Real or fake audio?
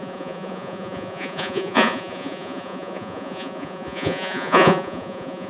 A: fake